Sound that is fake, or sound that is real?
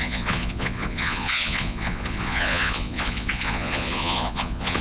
fake